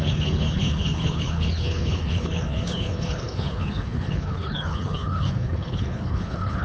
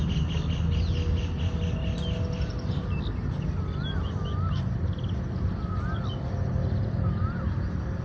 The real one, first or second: second